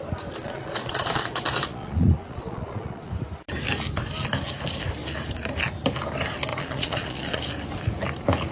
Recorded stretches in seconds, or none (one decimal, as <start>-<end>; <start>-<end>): 0.0-0.4; 3.1-6.5; 7.4-8.5